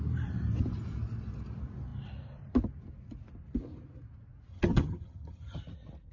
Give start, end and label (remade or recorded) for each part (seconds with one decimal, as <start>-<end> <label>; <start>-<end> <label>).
0.0-4.5 recorded; 4.5-5.6 remade; 5.6-6.1 recorded